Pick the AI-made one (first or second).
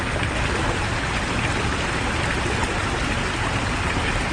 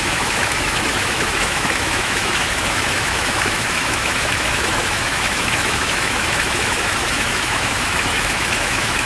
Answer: second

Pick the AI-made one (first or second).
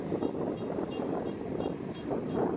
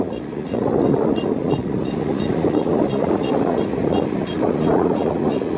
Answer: second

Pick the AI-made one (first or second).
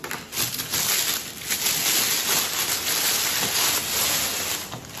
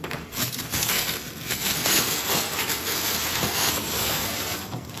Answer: second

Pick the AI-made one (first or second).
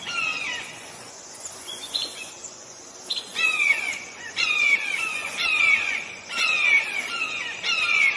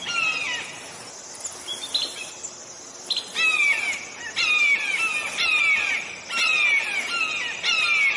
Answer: first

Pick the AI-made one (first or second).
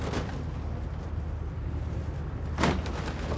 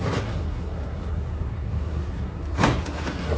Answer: second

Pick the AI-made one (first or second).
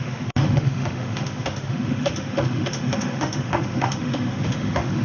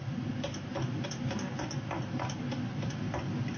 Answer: first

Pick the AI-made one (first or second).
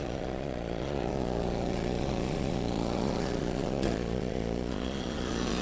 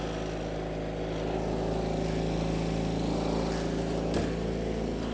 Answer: first